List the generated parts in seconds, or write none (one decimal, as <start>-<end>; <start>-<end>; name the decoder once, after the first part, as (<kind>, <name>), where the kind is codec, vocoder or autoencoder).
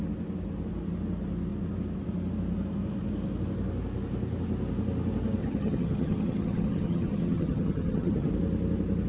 5.4-8.3 (vocoder, HiFi-GAN)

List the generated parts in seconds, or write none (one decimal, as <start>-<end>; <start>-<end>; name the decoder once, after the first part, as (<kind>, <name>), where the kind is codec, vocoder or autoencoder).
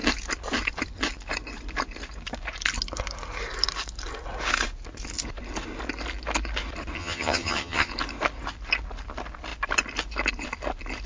7.0-7.9 (vocoder, HiFi-GAN)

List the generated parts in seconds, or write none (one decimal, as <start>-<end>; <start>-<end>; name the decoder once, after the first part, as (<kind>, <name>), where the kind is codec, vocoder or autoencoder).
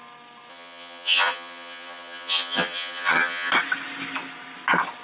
0.5-3.5 (vocoder, HiFi-GAN)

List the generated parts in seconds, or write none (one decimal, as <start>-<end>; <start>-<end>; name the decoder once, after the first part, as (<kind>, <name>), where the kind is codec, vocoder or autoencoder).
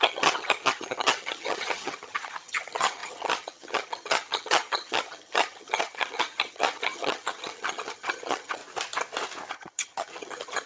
0.0-8.6 (vocoder, HiFi-GAN); 9.5-10.7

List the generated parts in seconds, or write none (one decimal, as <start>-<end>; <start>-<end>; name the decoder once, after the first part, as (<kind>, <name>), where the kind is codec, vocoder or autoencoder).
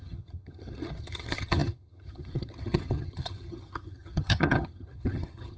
0.0-5.6 (vocoder, HiFi-GAN)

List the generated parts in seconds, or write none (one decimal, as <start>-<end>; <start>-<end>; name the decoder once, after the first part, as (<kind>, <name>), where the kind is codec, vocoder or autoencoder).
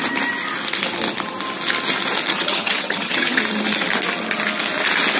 2.3-3.4 (vocoder, HiFi-GAN)